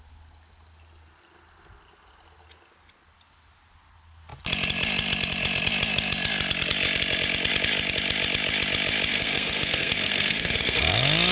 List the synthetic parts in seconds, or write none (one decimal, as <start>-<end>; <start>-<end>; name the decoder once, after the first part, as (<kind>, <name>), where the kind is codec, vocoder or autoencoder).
9.1-10.8 (codec, SNAC)